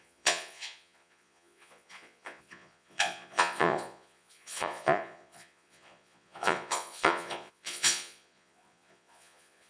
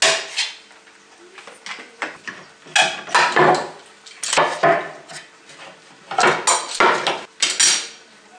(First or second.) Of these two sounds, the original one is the second